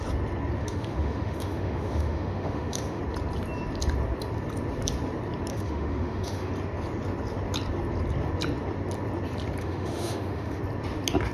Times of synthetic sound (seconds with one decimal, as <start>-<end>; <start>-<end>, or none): 0.6-3.0; 5.5-6.5; 9.6-10.6

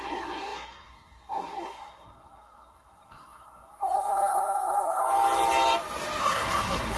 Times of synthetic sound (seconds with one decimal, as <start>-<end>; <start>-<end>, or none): 0.0-5.0; 6.2-7.0

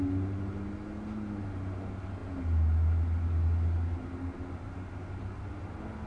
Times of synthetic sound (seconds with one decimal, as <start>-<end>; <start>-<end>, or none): none